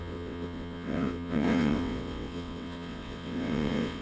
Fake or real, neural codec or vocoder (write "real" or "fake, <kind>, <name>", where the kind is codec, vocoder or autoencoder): fake, vocoder, WaveNeXt